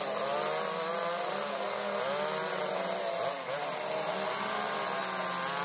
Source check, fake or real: real